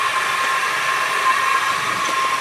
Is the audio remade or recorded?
recorded